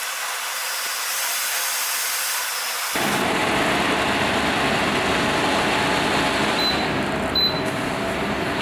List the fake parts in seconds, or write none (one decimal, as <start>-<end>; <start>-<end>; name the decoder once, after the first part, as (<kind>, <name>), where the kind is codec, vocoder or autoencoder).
none